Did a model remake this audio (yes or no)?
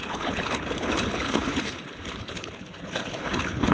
yes